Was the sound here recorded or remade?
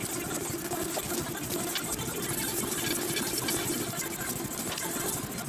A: recorded